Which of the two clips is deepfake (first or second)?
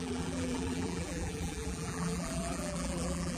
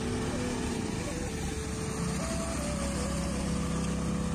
first